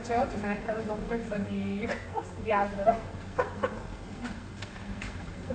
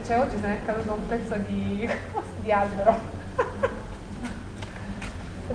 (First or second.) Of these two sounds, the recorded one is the second